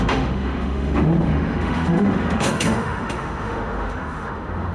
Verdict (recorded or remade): remade